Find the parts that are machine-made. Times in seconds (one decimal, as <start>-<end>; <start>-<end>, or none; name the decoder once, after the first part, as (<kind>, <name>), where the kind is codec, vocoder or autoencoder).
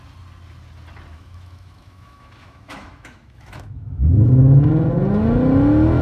1.1-4.7 (autoencoder, DAC-VAE)